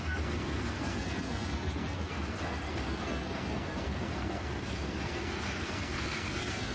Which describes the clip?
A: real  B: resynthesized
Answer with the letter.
B